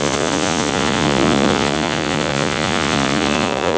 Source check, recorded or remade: remade